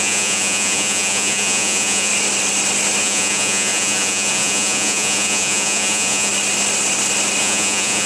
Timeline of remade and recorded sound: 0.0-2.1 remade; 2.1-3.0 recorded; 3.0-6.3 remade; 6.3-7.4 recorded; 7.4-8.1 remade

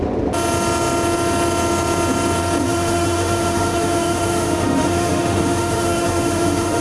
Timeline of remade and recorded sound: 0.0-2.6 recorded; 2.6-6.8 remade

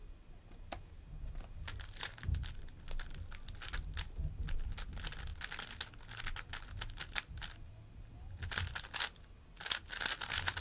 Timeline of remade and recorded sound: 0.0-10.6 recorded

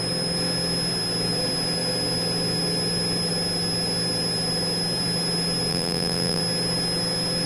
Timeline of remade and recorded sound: 0.0-5.7 recorded; 5.7-6.4 remade; 6.4-7.5 recorded

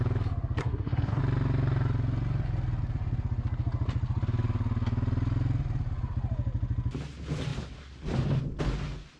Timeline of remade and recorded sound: 0.0-0.6 recorded; 0.6-1.2 remade; 1.2-9.2 recorded

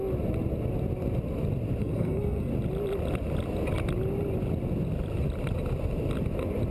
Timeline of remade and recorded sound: 0.0-1.8 recorded; 1.8-2.5 remade; 2.5-6.7 recorded

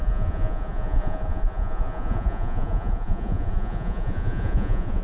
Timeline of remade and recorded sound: 0.0-5.0 remade